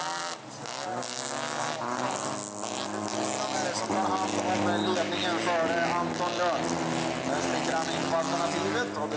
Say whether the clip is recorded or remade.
recorded